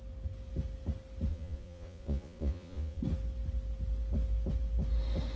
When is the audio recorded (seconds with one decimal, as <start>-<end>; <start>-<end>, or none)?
0.0-1.3; 3.0-5.4